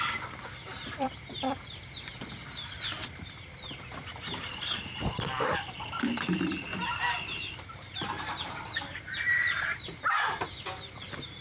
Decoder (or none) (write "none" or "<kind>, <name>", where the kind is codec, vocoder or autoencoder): vocoder, BigVGAN v2